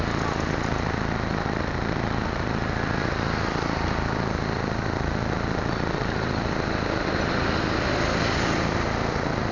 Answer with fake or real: real